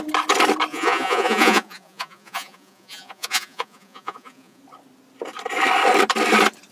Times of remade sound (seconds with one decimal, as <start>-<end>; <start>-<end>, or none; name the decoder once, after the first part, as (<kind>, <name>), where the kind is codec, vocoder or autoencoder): 0.7-4.6 (vocoder, Vocos)